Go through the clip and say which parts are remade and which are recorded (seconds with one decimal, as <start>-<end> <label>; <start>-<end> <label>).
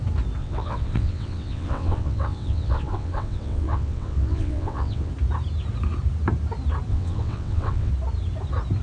0.0-0.4 recorded; 0.4-5.1 remade; 5.1-6.9 recorded; 6.9-7.9 remade; 7.9-8.8 recorded